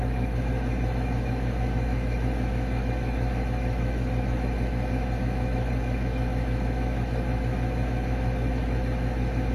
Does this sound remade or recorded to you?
remade